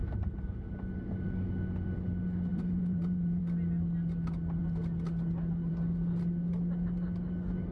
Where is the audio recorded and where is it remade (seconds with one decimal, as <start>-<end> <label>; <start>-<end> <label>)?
0.0-0.6 remade; 0.6-2.5 recorded; 2.5-3.4 remade; 3.4-7.7 recorded

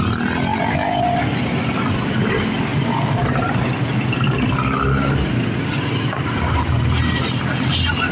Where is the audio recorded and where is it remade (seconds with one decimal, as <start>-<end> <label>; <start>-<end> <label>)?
0.0-0.5 recorded; 0.5-1.2 remade; 1.2-2.7 recorded; 2.7-3.5 remade; 3.5-8.1 recorded